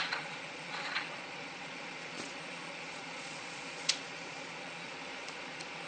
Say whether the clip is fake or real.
fake